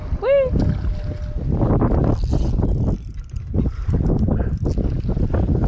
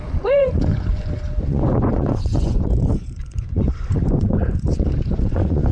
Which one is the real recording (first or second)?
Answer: first